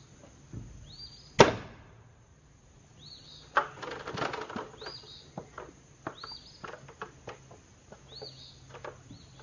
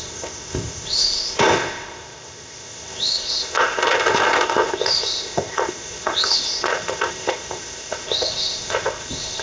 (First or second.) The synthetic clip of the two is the second